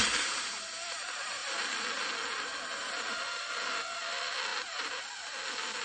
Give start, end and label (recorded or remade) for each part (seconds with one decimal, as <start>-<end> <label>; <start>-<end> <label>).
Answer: 0.0-5.8 recorded